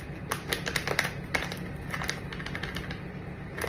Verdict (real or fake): real